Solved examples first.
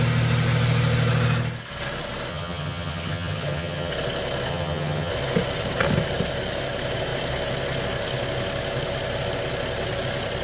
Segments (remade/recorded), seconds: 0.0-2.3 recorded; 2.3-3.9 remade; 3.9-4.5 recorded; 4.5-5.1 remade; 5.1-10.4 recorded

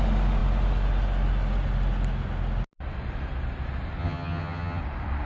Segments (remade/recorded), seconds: 0.0-4.0 recorded; 4.0-4.8 remade; 4.8-5.3 recorded

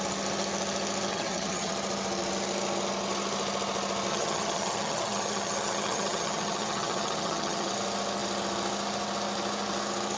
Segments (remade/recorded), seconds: 0.0-1.1 recorded; 1.1-1.7 remade; 1.7-4.1 recorded; 4.1-7.7 remade; 7.7-10.2 recorded

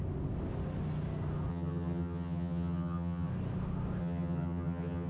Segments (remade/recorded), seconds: 0.0-1.5 recorded; 1.5-3.3 remade; 3.3-4.0 recorded; 4.0-5.1 remade